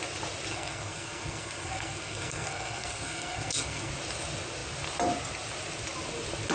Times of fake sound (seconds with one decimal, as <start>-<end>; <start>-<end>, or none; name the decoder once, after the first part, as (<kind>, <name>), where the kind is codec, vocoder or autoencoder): 0.5-3.9 (codec, SNAC)